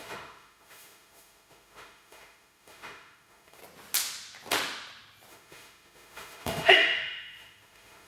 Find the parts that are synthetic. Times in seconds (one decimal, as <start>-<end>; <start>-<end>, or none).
0.0-3.6; 5.3-8.1